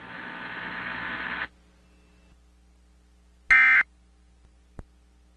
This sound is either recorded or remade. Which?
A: recorded